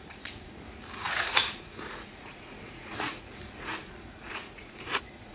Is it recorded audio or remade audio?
remade